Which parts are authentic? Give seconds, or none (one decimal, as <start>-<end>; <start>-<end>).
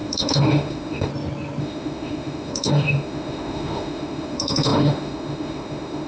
1.1-1.6